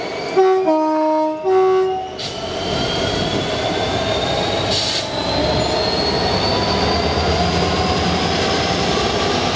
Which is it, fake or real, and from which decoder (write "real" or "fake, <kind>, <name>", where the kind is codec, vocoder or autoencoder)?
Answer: real